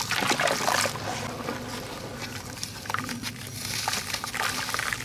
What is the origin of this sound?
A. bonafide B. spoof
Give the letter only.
A